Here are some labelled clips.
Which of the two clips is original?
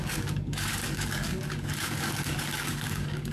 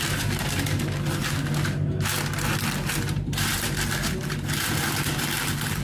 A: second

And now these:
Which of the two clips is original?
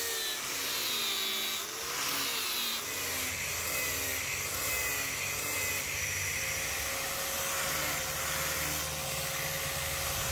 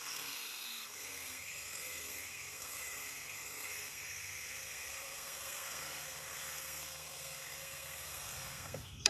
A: first